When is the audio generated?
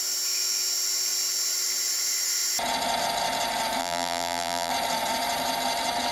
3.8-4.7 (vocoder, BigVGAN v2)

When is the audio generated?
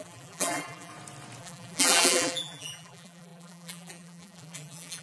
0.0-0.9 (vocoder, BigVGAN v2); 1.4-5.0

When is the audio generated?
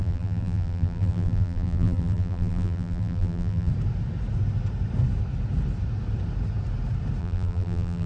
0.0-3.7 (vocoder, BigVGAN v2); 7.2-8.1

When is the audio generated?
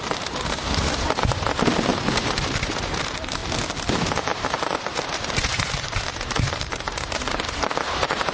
0.0-3.4 (vocoder, BigVGAN v2); 3.9-8.3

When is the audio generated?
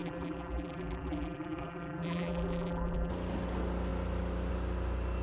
0.0-3.1 (vocoder, BigVGAN v2)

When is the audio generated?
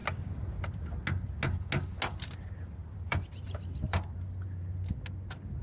2.8-4.4 (vocoder, BigVGAN v2)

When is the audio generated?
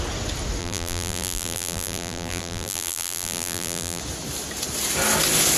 0.6-4.0 (vocoder, BigVGAN v2)